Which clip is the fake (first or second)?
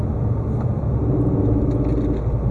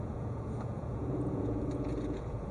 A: second